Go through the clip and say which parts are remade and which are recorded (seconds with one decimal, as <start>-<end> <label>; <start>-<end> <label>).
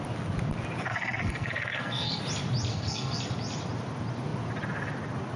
0.0-0.9 recorded; 0.9-2.2 remade; 2.2-2.7 recorded; 2.7-3.2 remade; 3.2-5.4 recorded